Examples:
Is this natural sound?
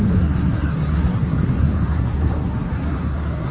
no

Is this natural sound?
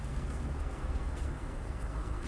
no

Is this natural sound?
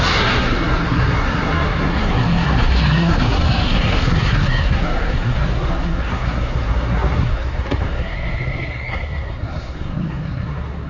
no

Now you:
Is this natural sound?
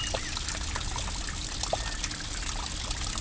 yes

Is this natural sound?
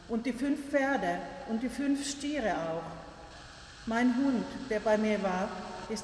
yes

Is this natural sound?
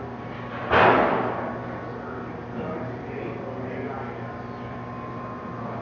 yes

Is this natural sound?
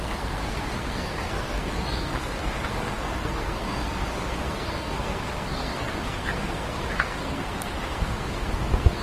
no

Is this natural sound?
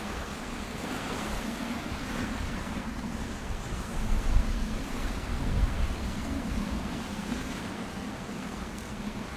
no